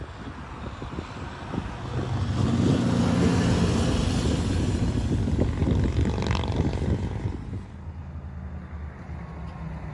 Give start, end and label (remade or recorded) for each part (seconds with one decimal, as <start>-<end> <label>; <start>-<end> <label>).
0.0-9.9 recorded